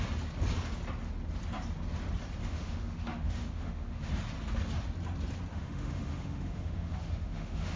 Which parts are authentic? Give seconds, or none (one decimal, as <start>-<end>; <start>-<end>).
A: 0.0-2.4; 4.1-5.5